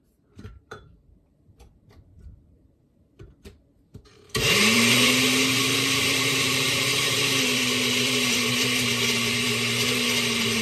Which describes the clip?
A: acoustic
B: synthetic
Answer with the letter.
B